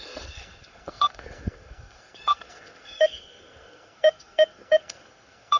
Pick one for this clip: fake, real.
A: fake